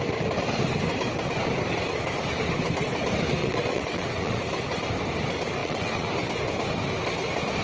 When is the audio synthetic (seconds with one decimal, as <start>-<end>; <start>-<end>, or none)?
3.4-4.4; 5.6-6.1